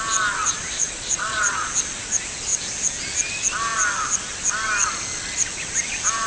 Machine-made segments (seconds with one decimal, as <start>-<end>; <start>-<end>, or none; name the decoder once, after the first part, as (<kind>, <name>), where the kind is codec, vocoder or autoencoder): 0.4-1.7 (vocoder, Vocos)